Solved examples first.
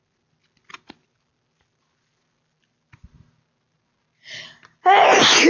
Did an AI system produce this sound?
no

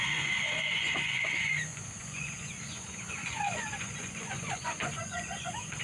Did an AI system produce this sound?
yes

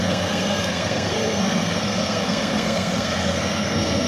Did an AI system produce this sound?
yes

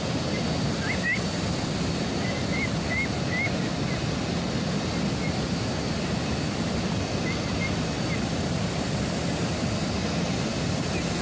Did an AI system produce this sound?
no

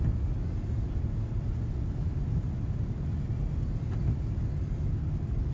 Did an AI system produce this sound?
no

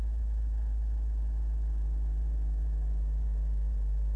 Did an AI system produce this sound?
yes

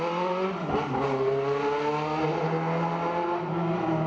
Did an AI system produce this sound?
no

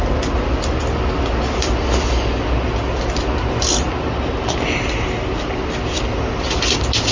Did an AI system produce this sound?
no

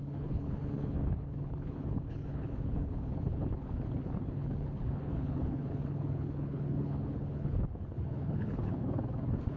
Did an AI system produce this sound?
yes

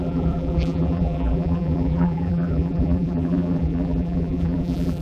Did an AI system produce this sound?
yes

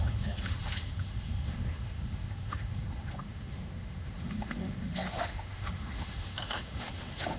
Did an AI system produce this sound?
yes